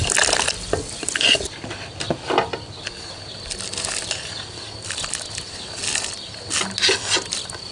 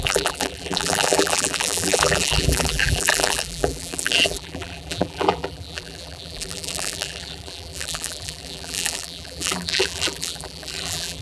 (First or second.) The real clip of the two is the first